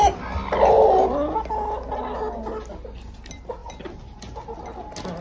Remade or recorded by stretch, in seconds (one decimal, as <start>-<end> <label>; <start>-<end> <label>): 0.0-5.2 recorded